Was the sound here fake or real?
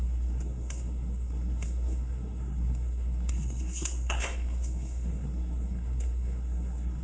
fake